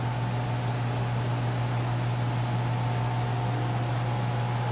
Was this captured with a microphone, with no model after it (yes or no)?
yes